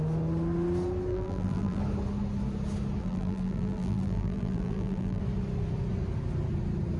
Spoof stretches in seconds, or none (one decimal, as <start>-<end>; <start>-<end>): 1.1-1.8; 3.0-5.2